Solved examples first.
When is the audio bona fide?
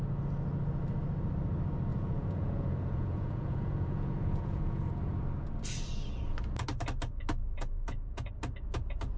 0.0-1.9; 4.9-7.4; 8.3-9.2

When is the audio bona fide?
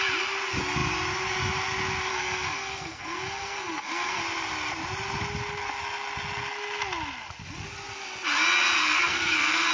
0.0-2.1; 4.2-8.8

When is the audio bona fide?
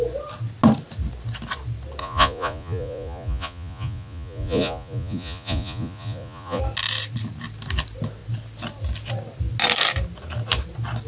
0.0-2.0; 6.6-11.1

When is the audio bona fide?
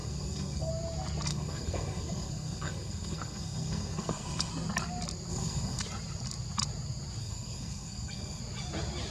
0.7-1.3; 4.5-5.3; 5.8-7.2; 8.4-9.1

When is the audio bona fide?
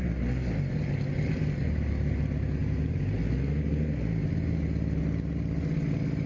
0.0-6.3